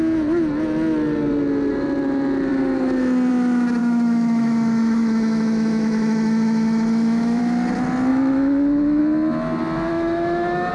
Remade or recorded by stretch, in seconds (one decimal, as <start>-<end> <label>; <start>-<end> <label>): 0.0-3.8 recorded; 3.8-7.4 remade; 7.4-8.1 recorded; 8.1-9.0 remade; 9.0-9.9 recorded; 9.9-10.7 remade